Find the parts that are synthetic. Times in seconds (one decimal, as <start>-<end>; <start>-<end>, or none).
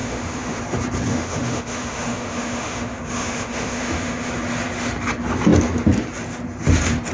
0.0-0.6; 1.1-4.3